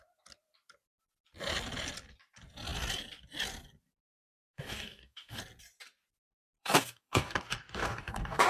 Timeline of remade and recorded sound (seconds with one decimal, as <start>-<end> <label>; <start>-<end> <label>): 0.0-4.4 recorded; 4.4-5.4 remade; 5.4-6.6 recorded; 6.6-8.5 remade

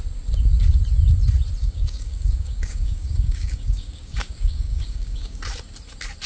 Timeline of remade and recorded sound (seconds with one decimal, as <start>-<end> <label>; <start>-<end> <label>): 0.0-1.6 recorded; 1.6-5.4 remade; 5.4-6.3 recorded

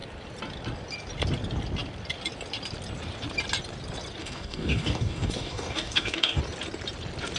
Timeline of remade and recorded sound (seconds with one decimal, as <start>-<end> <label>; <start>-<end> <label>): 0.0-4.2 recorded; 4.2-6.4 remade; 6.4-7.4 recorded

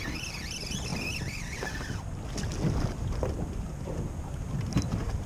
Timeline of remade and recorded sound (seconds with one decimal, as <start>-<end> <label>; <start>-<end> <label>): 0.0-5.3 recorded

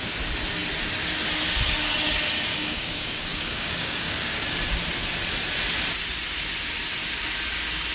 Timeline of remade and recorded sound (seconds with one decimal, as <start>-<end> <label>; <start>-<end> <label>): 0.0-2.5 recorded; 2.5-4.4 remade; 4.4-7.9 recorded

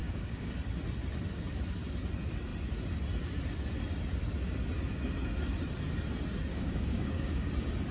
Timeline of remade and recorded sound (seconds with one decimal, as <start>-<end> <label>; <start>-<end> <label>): 0.0-0.5 remade; 0.5-6.5 recorded; 6.5-7.5 remade; 7.5-7.9 recorded

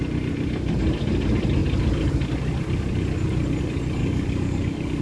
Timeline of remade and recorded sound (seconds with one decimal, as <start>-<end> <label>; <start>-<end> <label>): 0.0-4.0 recorded; 4.0-5.0 remade

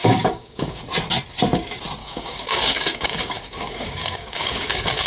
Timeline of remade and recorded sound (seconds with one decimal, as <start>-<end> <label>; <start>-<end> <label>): 0.0-0.8 remade; 0.8-2.0 recorded; 2.0-5.1 remade